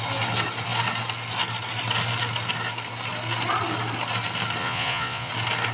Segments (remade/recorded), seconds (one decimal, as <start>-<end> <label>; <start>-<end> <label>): 0.0-4.6 recorded; 4.6-5.3 remade; 5.3-5.7 recorded